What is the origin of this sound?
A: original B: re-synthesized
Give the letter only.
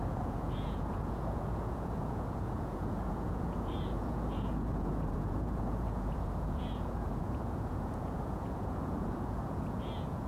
B